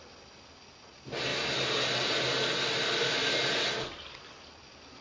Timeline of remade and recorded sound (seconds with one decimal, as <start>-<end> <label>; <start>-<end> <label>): 0.0-5.0 recorded